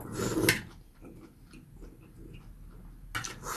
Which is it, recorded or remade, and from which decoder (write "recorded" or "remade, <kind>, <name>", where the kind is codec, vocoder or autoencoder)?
recorded